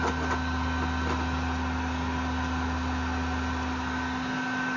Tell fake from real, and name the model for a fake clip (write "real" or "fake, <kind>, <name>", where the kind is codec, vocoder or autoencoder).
real